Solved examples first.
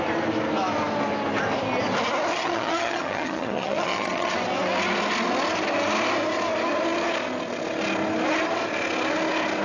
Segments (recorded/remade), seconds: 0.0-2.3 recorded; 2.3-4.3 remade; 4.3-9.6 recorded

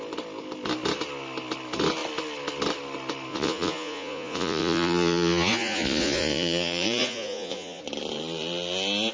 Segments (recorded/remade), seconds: 0.0-3.3 recorded; 3.3-7.8 remade; 7.8-9.1 recorded

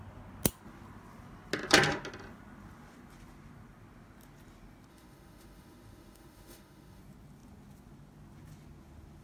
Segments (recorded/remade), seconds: 0.0-4.9 recorded; 4.9-7.0 remade; 7.0-9.2 recorded

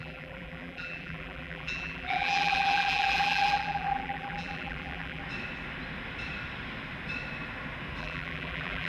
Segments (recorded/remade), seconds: 0.0-5.2 remade; 5.2-8.0 recorded; 8.0-8.9 remade

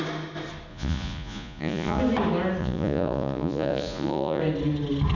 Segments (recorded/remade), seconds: 0.0-0.7 recorded; 0.7-2.0 remade; 2.0-2.6 recorded; 2.6-4.4 remade; 4.4-5.2 recorded

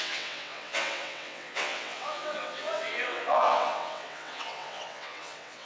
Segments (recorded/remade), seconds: 0.0-5.7 remade